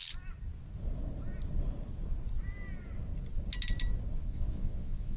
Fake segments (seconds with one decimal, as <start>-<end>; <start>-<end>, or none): 4.3-5.2